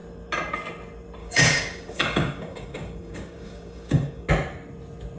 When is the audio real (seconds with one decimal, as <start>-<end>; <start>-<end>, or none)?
0.0-1.2; 4.3-5.2